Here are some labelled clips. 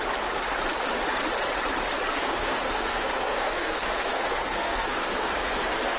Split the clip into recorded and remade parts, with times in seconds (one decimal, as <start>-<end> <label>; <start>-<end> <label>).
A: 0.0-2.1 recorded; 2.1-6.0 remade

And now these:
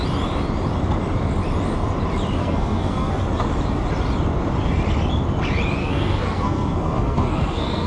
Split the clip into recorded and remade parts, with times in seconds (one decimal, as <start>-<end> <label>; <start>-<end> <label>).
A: 0.0-2.4 recorded; 2.4-3.2 remade; 3.2-5.8 recorded; 5.8-7.9 remade

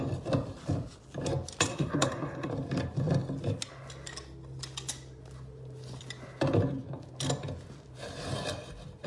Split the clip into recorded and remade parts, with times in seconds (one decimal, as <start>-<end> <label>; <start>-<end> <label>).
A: 0.0-1.7 recorded; 1.7-2.5 remade; 2.5-9.1 recorded

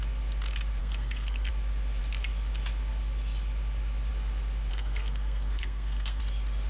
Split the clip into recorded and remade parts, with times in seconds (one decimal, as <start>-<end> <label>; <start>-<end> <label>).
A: 0.0-0.8 recorded; 0.8-1.5 remade; 1.5-4.7 recorded; 4.7-6.2 remade; 6.2-6.7 recorded

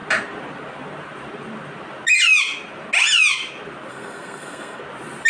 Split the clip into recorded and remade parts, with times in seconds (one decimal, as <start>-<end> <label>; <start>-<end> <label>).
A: 0.0-3.9 recorded; 3.9-4.8 remade; 4.8-5.3 recorded

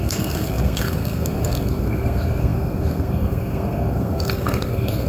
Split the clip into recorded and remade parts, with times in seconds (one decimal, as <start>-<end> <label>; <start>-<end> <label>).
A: 0.0-5.1 remade

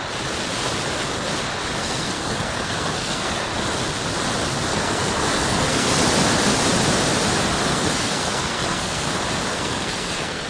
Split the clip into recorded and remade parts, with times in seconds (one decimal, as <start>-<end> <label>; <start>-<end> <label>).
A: 0.0-1.8 recorded; 1.8-3.5 remade; 3.5-4.7 recorded; 4.7-5.9 remade; 5.9-7.7 recorded; 7.7-9.1 remade; 9.1-9.5 recorded; 9.5-10.5 remade

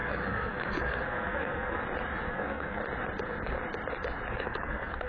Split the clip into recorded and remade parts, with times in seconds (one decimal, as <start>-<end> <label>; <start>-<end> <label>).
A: 0.0-1.8 remade; 1.8-2.3 recorded; 2.3-2.8 remade; 2.8-4.3 recorded; 4.3-5.1 remade